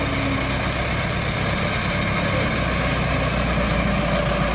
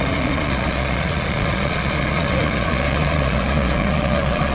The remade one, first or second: second